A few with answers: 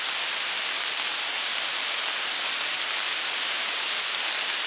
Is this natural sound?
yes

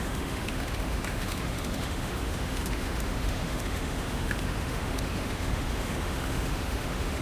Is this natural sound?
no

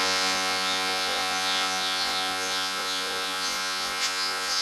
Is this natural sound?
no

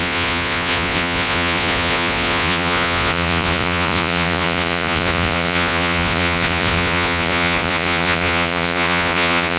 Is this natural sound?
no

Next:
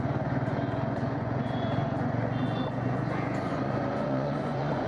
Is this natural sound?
no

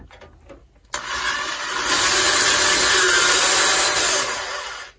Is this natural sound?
yes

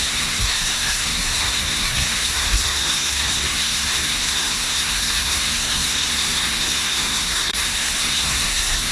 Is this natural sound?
no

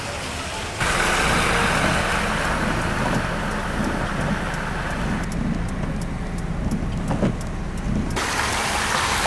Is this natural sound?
yes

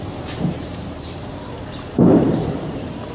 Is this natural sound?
no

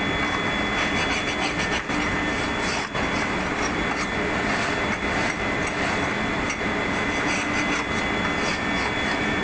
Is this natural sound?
yes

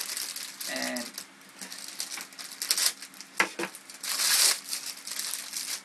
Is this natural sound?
yes